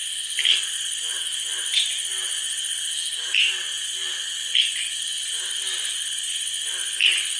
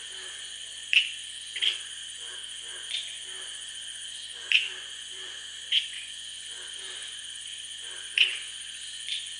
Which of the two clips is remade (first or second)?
second